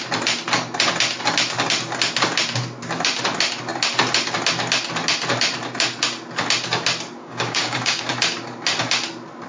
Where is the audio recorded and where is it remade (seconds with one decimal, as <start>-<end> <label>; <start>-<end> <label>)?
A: 0.0-7.2 recorded; 7.2-8.0 remade; 8.0-9.5 recorded

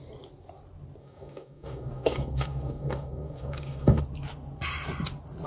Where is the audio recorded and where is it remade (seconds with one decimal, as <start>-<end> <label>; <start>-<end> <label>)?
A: 0.0-1.0 recorded; 1.0-4.0 remade; 4.0-5.5 recorded

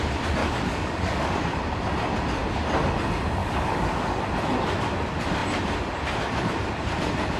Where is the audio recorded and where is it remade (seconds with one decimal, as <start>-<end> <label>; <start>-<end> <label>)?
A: 0.0-0.4 recorded; 0.4-1.3 remade; 1.3-3.4 recorded; 3.4-4.2 remade; 4.2-7.4 recorded

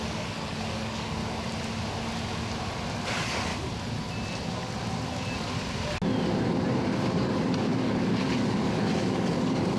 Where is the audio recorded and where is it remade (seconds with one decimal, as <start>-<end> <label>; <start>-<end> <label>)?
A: 0.0-1.2 remade; 1.2-2.9 recorded; 2.9-3.5 remade; 3.5-7.1 recorded; 7.1-9.8 remade

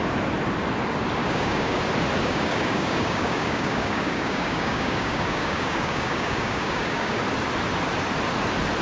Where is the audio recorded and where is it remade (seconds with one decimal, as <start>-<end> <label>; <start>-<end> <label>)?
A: 0.0-1.2 recorded; 1.2-1.8 remade; 1.8-2.2 recorded; 2.2-7.2 remade; 7.2-8.8 recorded